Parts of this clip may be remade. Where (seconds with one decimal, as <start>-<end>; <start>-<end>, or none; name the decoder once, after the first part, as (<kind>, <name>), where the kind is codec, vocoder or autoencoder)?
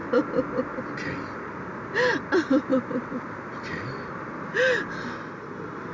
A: none